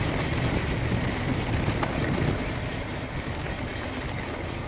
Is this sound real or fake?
real